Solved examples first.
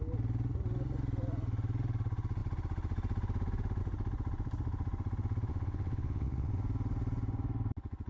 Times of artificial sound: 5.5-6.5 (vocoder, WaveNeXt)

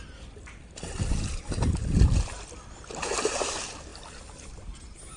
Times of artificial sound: none

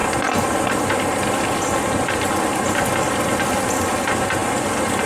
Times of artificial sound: none